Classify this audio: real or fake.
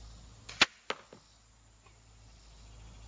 real